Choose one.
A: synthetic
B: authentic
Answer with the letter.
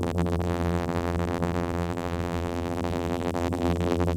A